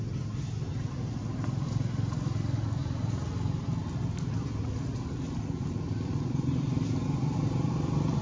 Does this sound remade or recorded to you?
recorded